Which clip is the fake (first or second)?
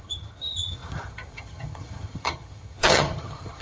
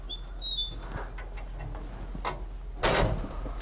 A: first